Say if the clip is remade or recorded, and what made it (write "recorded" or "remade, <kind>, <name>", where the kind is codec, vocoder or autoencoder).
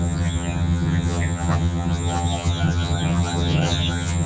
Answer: remade, vocoder, HiFi-GAN